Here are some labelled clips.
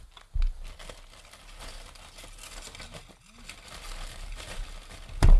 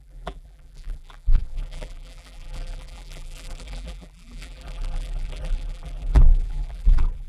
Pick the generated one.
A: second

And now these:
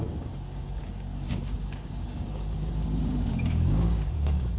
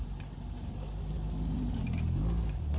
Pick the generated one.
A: first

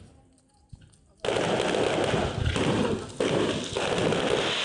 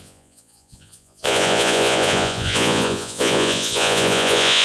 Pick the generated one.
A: second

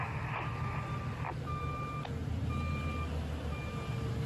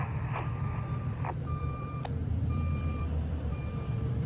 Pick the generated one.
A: second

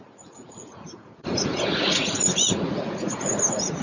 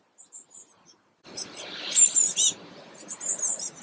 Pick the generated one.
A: first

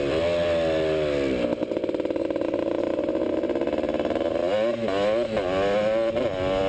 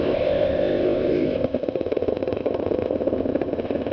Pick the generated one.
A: second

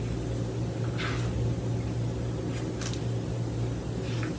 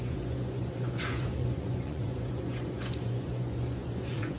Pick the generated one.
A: second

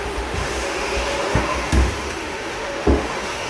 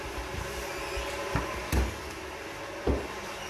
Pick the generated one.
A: first